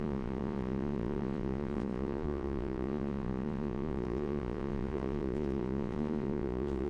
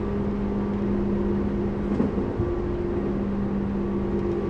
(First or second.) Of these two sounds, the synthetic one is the first